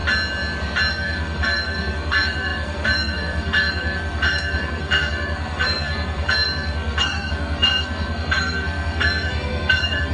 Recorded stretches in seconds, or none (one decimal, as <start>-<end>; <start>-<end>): 0.0-0.9